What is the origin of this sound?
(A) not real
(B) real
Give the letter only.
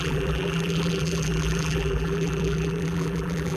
A